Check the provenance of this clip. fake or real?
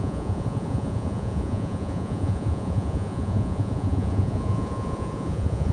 fake